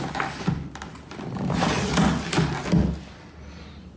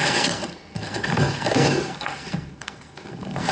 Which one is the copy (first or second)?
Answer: second